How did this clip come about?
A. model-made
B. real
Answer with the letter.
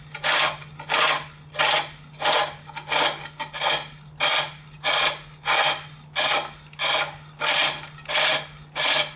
B